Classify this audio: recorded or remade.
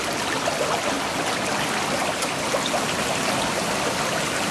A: recorded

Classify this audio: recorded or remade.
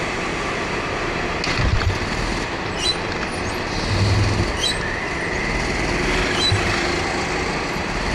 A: recorded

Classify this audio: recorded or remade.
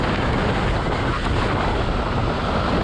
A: recorded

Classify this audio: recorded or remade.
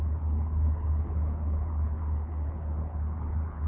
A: remade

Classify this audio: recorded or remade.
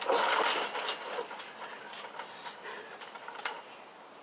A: recorded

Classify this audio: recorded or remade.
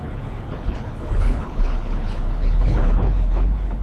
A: remade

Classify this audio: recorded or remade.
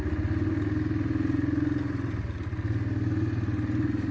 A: recorded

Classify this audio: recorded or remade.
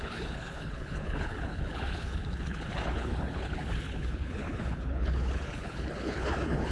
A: remade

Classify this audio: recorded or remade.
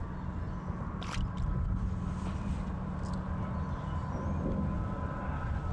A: recorded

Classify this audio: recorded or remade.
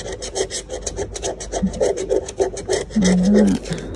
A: recorded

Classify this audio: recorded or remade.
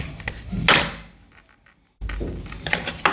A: recorded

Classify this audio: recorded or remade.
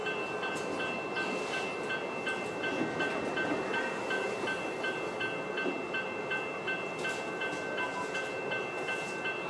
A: recorded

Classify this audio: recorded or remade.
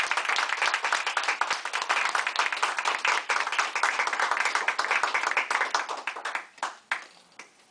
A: recorded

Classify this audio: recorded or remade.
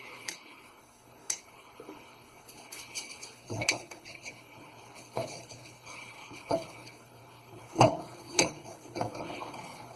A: remade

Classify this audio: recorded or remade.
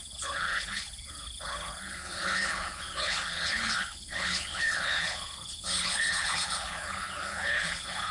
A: remade